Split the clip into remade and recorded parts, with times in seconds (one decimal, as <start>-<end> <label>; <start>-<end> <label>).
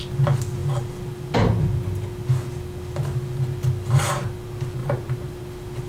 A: 0.0-4.8 recorded; 4.8-5.3 remade; 5.3-5.9 recorded